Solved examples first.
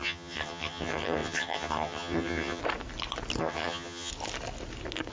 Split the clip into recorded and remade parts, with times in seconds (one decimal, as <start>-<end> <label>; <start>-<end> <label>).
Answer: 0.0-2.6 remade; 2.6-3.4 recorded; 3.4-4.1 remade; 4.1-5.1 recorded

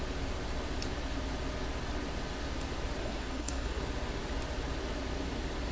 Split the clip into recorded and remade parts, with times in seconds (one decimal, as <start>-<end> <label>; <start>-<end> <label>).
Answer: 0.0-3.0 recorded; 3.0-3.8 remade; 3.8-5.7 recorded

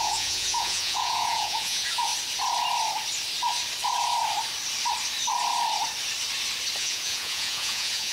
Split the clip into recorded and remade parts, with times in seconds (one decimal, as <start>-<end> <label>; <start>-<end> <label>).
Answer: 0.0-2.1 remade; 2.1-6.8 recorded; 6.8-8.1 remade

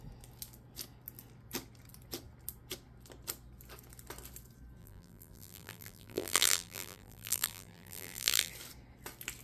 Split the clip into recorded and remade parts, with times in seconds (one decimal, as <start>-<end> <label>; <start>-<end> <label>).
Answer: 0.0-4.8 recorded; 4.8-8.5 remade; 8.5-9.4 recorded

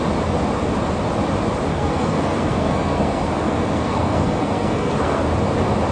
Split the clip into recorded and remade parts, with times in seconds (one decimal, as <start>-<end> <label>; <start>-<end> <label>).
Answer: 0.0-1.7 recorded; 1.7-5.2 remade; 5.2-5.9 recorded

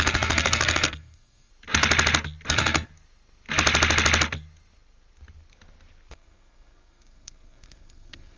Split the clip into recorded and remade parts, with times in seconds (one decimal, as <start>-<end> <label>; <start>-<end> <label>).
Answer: 0.0-1.5 remade; 1.5-2.5 recorded; 2.5-2.9 remade; 2.9-6.1 recorded; 6.1-8.4 remade